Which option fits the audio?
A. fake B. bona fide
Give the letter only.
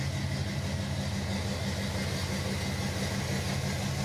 B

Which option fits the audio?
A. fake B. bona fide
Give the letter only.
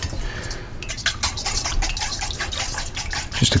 B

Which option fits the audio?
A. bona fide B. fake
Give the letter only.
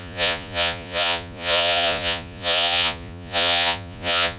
B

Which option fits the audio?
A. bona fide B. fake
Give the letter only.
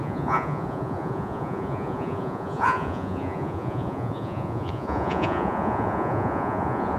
B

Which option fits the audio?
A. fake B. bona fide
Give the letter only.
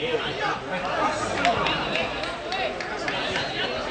B